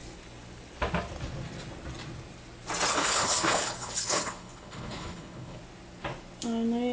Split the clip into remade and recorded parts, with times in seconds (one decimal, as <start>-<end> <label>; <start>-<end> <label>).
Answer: 0.0-2.9 recorded; 2.9-5.6 remade; 5.6-6.9 recorded